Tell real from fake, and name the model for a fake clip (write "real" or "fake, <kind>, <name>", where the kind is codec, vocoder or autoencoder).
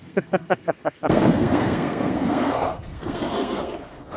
fake, codec, SNAC